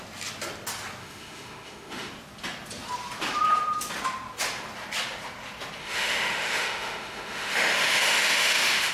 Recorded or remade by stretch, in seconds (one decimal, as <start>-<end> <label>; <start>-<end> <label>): 0.0-1.0 recorded; 1.0-2.1 remade; 2.1-5.8 recorded; 5.8-8.9 remade